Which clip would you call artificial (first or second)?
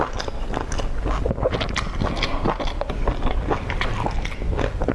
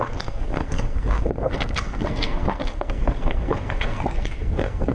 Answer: second